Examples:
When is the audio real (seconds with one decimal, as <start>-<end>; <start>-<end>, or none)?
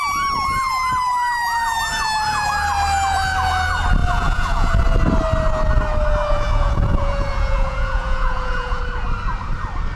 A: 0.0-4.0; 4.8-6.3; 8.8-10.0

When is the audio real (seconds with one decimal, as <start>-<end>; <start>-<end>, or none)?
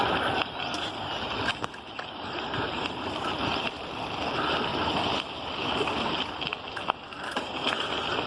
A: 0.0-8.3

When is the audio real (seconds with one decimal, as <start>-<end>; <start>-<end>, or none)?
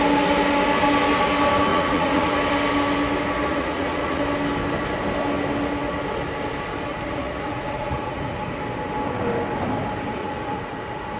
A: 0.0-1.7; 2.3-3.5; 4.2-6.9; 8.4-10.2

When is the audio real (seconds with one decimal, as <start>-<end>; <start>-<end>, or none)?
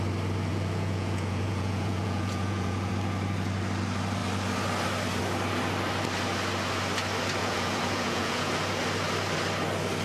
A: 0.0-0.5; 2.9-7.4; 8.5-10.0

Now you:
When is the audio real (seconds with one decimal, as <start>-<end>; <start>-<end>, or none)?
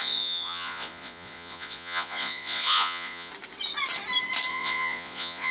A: 3.3-4.5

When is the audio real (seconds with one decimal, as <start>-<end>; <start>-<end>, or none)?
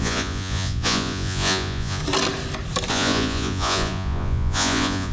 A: 2.0-2.9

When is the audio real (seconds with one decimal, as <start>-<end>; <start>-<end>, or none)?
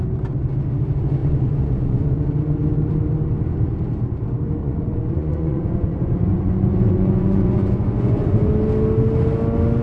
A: 0.0-1.2; 2.3-4.6; 8.5-9.8